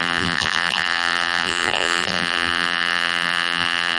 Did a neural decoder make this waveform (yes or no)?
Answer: yes